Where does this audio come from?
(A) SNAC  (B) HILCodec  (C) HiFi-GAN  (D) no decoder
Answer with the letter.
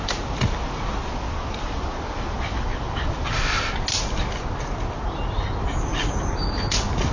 D